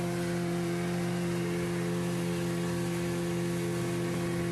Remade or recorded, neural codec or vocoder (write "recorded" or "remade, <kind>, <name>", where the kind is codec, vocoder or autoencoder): recorded